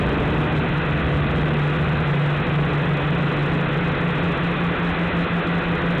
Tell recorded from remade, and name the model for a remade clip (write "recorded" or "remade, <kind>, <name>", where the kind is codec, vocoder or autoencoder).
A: recorded